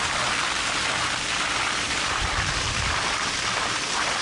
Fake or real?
fake